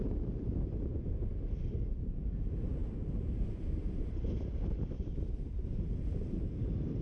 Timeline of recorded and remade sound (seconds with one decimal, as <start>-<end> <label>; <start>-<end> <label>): 0.0-0.8 remade; 0.8-1.7 recorded; 1.7-7.0 remade